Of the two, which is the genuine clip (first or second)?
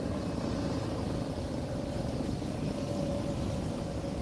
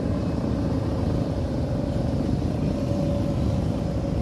second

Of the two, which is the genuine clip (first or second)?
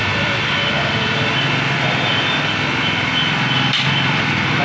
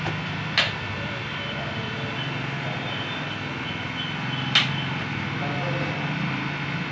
second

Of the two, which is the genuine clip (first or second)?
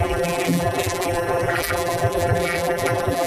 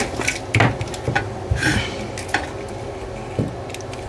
second